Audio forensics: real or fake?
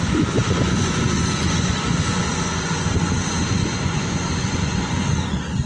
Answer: fake